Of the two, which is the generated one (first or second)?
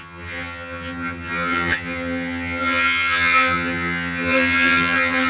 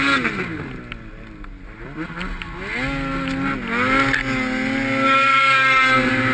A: first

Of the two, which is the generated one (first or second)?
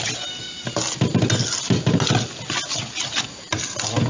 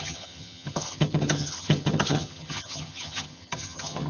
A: second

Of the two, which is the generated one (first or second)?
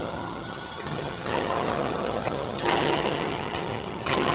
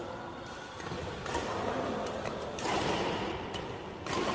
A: first